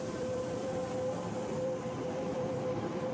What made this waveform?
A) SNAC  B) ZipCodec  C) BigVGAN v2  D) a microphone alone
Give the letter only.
C